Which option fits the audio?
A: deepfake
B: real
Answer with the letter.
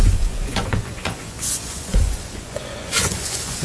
A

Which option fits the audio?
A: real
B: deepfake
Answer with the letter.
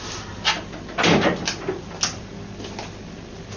A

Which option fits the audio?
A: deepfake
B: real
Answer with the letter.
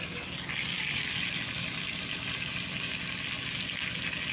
B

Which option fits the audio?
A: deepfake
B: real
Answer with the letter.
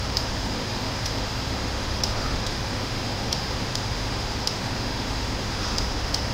A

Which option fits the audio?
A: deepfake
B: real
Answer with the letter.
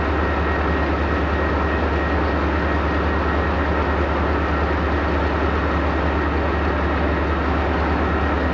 B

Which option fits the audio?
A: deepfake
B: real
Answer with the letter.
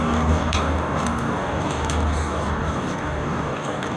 A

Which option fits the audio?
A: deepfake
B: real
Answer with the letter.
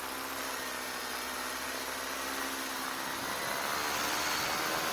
B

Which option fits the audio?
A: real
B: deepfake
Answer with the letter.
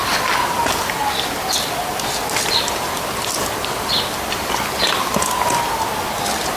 A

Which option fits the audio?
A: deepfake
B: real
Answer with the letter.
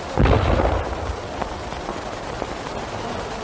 A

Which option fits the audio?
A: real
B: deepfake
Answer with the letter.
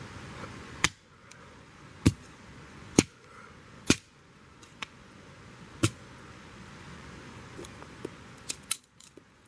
B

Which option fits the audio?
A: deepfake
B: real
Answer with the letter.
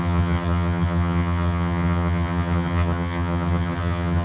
A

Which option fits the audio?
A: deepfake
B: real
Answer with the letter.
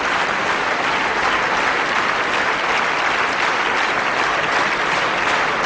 B